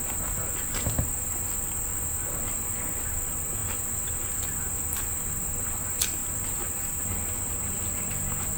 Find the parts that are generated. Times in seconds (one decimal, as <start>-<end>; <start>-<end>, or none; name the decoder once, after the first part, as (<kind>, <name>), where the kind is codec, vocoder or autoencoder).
none